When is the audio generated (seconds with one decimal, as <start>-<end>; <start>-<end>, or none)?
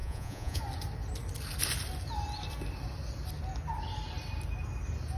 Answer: 0.0-0.6